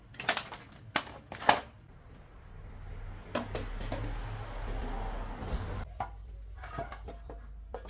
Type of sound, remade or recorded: recorded